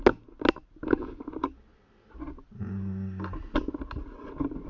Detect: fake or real real